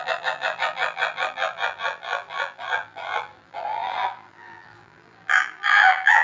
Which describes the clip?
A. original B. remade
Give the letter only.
B